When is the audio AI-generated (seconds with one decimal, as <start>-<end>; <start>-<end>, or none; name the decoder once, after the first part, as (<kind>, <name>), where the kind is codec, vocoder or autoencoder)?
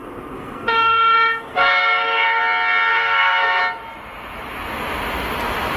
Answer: 0.0-2.4 (codec, SNAC); 2.9-3.6